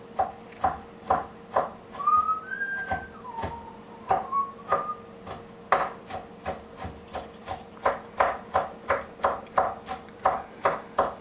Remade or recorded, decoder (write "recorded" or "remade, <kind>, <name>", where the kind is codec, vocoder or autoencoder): recorded